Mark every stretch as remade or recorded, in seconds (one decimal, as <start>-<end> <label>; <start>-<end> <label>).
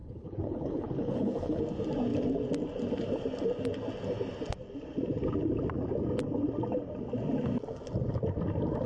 0.0-1.6 remade; 1.6-8.9 recorded